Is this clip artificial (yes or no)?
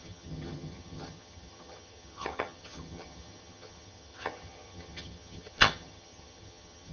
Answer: yes